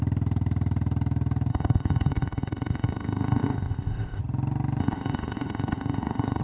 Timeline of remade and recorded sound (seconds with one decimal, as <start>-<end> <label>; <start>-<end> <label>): 0.0-1.5 recorded; 1.5-4.2 remade; 4.2-4.8 recorded; 4.8-6.4 remade